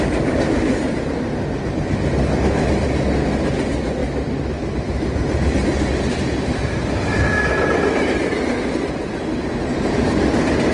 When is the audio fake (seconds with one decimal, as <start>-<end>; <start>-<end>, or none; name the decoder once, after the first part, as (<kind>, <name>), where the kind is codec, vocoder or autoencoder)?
none